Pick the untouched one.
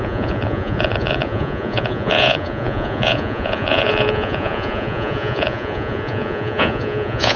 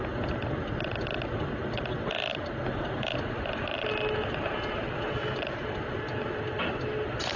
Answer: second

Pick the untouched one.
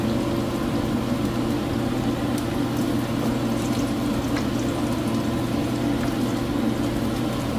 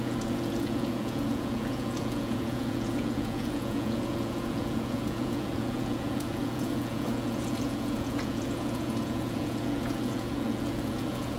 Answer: first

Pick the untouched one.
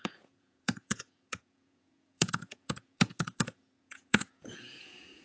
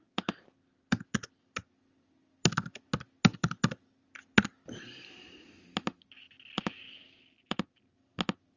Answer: second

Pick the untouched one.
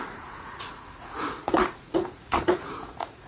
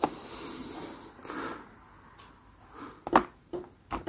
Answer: second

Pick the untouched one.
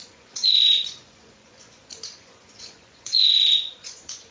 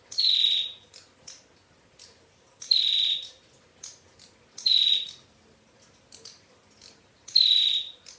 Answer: second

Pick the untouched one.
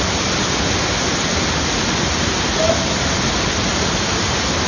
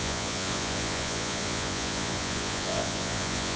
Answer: first